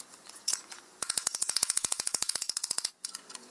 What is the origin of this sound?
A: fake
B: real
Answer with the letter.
A